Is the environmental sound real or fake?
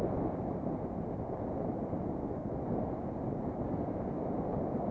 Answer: real